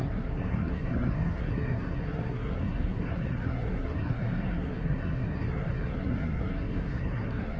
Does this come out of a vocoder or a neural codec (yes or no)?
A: yes